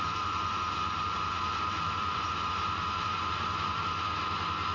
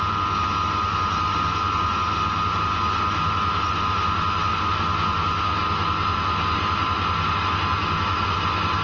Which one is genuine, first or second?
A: second